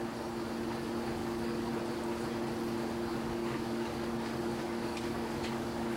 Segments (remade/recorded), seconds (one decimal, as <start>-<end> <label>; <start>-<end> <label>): 0.0-1.2 recorded; 1.2-1.7 remade; 1.7-3.1 recorded; 3.1-6.0 remade